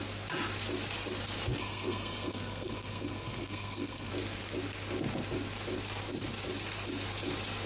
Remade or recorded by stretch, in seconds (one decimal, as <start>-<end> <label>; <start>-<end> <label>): 0.0-1.6 recorded; 1.6-4.1 remade; 4.1-7.7 recorded